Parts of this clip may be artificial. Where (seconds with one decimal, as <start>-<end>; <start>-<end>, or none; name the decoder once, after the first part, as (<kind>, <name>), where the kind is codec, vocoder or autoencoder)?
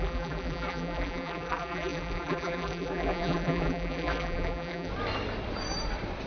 0.0-4.9 (vocoder, BigVGAN v2)